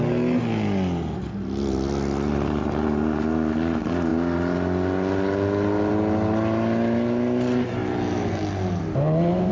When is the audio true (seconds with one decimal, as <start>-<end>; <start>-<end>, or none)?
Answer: 0.0-9.5